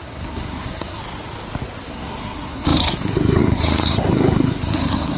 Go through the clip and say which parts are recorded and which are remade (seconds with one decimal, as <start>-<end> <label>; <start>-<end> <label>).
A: 0.0-1.0 remade; 1.0-1.9 recorded; 1.9-5.2 remade